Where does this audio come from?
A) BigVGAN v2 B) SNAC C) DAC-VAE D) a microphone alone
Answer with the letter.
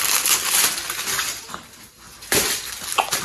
D